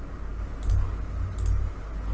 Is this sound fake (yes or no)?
no